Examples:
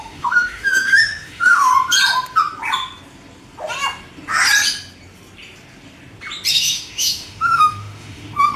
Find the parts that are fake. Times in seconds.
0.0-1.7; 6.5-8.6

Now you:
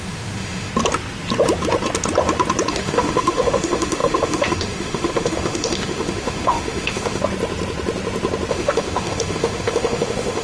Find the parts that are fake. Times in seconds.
0.0-0.7; 2.7-7.2; 8.5-10.4